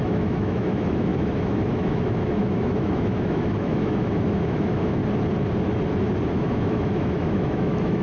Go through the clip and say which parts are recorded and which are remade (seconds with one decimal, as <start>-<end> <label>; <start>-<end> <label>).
0.0-5.0 remade; 5.0-6.3 recorded; 6.3-8.0 remade